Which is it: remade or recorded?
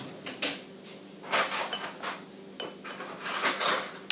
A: recorded